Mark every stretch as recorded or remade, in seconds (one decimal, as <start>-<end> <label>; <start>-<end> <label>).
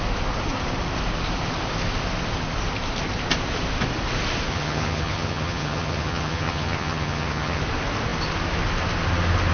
0.0-4.5 recorded; 4.5-7.6 remade; 7.6-9.5 recorded